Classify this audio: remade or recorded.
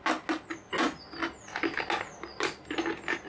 recorded